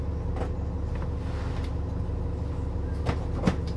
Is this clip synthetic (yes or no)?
no